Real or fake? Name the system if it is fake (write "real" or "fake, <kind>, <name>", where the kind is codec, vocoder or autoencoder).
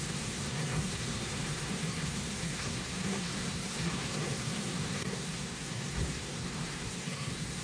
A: fake, codec, SNAC